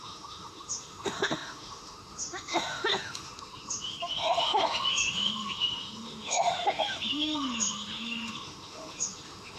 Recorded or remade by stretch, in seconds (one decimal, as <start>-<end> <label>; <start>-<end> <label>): 0.0-9.6 remade

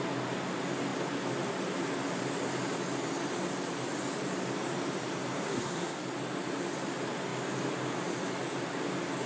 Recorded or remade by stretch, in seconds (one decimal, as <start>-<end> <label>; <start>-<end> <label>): 0.0-5.4 recorded; 5.4-6.0 remade; 6.0-9.3 recorded

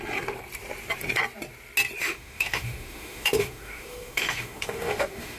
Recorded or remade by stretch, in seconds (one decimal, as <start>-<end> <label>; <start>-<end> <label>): 0.0-2.0 recorded; 2.0-5.4 remade

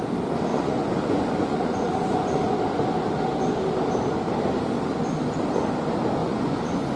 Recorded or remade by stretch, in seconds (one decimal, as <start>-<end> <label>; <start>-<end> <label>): 0.0-0.5 recorded; 0.5-2.5 remade; 2.5-6.2 recorded; 6.2-7.0 remade

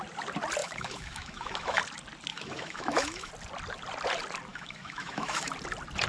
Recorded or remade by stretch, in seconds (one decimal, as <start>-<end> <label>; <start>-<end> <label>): 0.0-0.6 recorded; 0.6-1.8 remade; 1.8-2.3 recorded; 2.3-3.3 remade; 3.3-4.5 recorded; 4.5-5.5 remade; 5.5-6.1 recorded

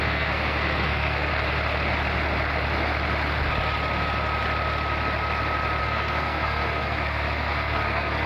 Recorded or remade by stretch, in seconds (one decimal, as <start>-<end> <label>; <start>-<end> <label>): 0.0-1.3 remade; 1.3-5.8 recorded; 5.8-8.3 remade

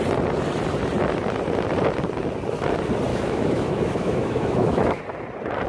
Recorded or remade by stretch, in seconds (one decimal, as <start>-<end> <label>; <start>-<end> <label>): 0.0-3.1 recorded; 3.1-5.0 remade; 5.0-5.7 recorded